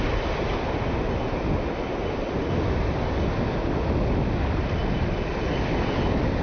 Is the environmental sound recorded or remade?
recorded